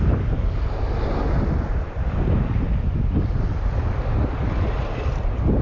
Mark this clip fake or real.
real